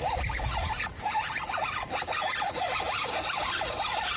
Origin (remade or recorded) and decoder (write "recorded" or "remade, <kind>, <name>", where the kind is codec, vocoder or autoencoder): recorded